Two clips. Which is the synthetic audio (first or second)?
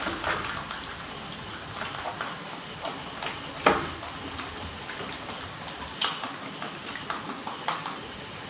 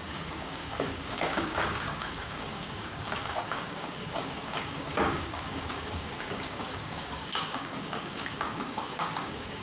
second